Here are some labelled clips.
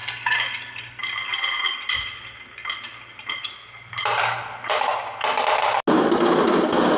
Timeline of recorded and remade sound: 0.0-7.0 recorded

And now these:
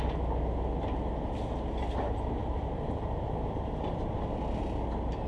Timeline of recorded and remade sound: 0.0-2.4 recorded; 2.4-4.6 remade; 4.6-5.3 recorded